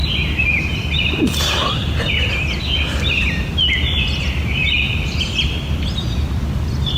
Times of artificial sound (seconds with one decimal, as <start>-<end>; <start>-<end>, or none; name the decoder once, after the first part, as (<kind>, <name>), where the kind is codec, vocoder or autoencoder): none